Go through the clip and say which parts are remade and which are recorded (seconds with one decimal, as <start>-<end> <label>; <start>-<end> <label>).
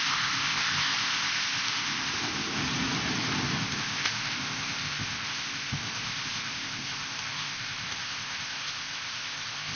0.0-2.6 remade; 2.6-3.6 recorded; 3.6-9.8 remade